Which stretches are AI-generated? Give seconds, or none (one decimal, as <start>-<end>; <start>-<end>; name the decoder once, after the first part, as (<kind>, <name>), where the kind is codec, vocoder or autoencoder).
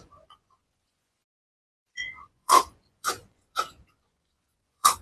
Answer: 0.0-5.0 (vocoder, Vocos)